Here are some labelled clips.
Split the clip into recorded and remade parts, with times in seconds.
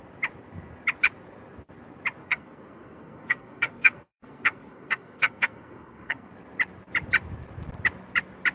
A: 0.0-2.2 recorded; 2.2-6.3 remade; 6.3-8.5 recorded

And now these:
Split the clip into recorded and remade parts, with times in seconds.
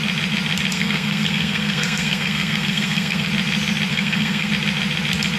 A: 0.0-0.7 recorded; 0.7-3.3 remade; 3.3-3.9 recorded; 3.9-4.5 remade; 4.5-5.4 recorded